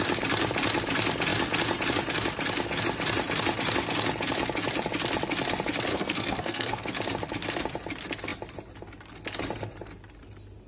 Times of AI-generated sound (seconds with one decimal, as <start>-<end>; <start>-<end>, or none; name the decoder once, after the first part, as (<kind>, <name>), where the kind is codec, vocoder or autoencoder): 5.9-6.8 (codec, SNAC)